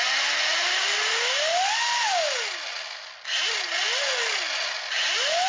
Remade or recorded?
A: recorded